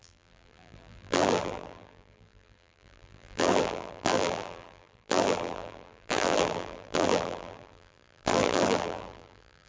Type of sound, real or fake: fake